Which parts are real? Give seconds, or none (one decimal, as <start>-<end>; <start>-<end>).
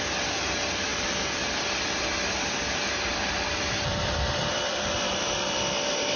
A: 0.9-3.3